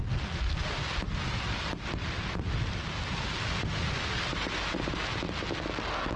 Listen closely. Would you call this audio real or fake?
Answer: real